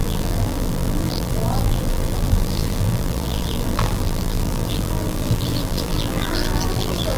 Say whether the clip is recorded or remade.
remade